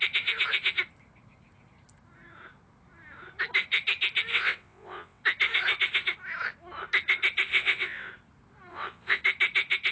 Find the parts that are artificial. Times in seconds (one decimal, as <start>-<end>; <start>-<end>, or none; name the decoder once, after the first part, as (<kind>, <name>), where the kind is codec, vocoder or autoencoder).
4.3-5.2 (vocoder, WaveNeXt); 7.5-8.1; 8.7-9.2